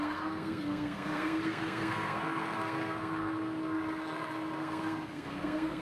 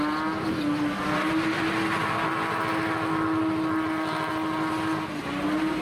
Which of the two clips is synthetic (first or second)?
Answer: first